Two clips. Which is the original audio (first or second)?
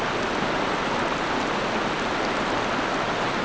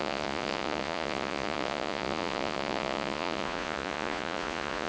first